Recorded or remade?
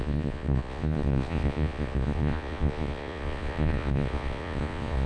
remade